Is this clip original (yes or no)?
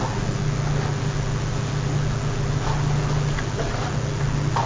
yes